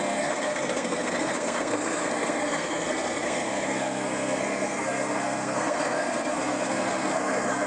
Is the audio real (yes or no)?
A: no